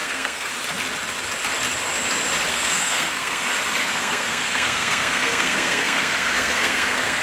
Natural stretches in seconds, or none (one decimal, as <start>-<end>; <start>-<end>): 0.5-2.5; 3.4-3.8